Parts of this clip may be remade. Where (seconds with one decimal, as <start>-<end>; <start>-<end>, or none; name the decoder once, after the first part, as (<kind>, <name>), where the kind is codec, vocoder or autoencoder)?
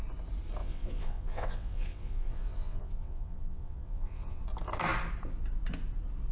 0.6-4.4 (vocoder, WaveNeXt)